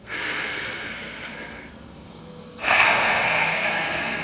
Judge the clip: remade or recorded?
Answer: remade